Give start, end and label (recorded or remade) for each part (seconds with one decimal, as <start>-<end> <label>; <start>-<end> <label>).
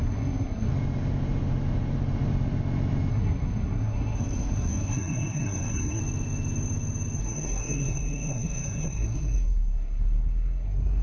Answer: 0.0-0.7 remade; 0.7-3.1 recorded; 3.1-6.0 remade; 6.0-7.2 recorded; 7.2-11.0 remade